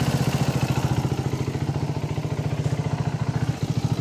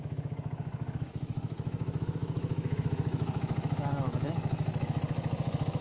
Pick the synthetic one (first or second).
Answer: second